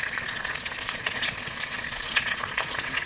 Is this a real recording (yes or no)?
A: no